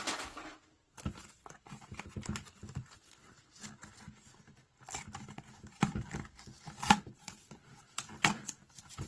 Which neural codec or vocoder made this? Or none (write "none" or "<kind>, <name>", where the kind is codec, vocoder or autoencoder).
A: none